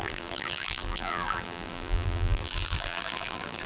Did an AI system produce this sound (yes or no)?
yes